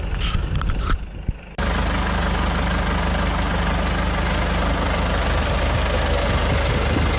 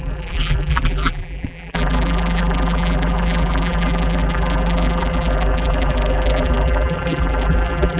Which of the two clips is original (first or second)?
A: first